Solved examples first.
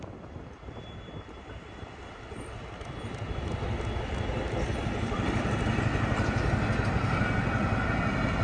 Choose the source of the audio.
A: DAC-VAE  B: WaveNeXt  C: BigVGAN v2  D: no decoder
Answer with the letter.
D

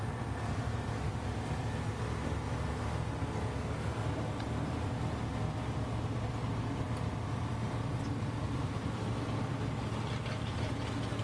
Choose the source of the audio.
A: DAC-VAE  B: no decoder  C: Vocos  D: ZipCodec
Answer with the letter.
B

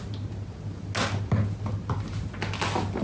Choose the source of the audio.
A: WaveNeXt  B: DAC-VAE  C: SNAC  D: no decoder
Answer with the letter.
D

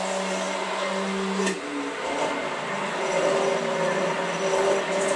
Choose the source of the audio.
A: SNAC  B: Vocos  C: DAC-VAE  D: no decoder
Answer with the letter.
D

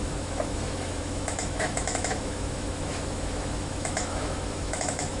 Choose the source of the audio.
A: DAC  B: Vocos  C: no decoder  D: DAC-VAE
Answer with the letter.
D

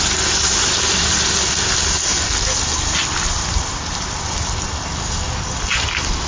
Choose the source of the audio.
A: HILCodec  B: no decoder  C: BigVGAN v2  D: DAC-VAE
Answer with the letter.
B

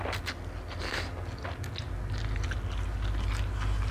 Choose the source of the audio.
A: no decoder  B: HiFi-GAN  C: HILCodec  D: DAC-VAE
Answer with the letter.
A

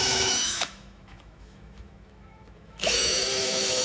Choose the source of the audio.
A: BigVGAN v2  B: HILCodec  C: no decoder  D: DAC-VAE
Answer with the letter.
D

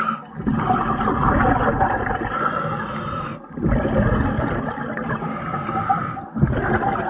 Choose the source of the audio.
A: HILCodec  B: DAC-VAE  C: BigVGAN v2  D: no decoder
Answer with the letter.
D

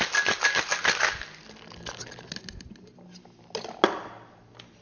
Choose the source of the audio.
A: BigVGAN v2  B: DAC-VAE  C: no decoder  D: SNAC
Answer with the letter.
C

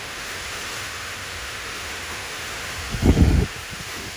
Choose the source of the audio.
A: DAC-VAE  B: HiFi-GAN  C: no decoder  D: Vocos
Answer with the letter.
A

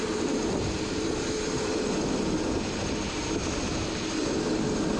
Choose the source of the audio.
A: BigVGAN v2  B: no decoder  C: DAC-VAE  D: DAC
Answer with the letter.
B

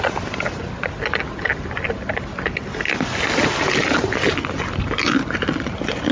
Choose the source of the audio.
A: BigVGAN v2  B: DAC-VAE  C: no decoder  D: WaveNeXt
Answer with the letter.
C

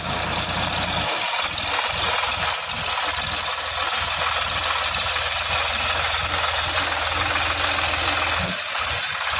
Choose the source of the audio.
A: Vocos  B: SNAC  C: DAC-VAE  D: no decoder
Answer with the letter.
D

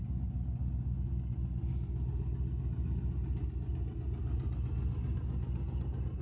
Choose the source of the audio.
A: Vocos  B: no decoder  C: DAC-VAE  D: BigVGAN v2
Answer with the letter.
B